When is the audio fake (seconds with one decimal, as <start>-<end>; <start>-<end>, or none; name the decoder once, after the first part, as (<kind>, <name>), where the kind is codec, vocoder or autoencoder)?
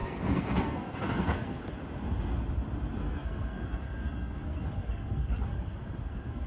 0.0-1.6 (codec, SNAC); 3.0-6.5